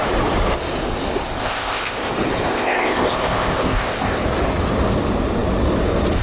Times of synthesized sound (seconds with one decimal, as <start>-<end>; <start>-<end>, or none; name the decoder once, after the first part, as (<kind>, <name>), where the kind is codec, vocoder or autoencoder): 1.4-2.1 (codec, ZipCodec); 2.5-4.2